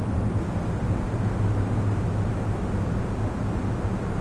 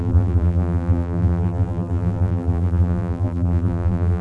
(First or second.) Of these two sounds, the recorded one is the first